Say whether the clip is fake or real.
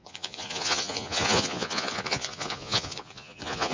fake